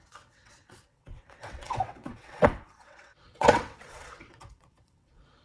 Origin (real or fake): fake